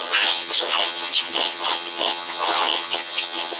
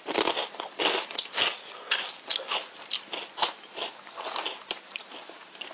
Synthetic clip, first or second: first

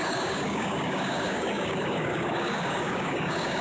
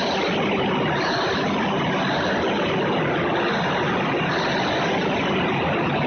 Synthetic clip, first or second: first